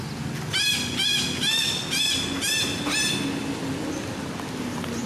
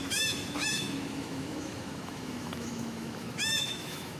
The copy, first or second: second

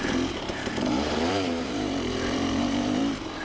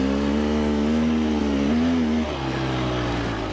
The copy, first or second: first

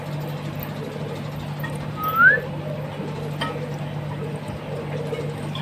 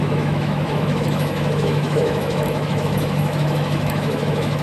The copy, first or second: second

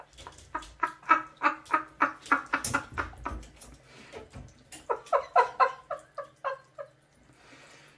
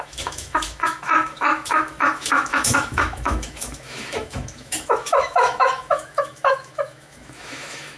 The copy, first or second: second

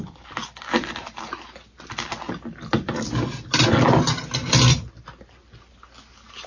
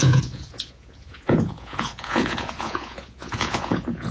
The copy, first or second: second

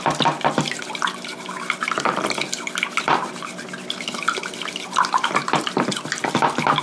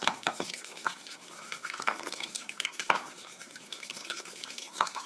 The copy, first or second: second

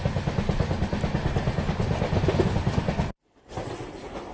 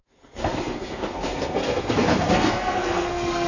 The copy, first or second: second